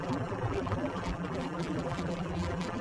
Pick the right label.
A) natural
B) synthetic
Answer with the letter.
B